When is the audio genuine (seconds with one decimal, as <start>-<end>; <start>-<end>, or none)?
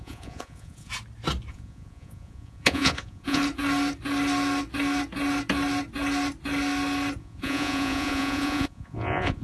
0.9-1.5; 3.4-7.2